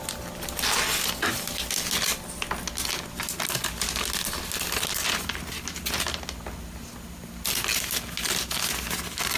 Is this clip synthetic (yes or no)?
no